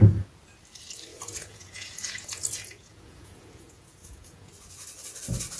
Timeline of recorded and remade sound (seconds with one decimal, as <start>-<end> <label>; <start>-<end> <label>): 0.0-1.1 recorded; 1.1-4.5 remade; 4.5-5.6 recorded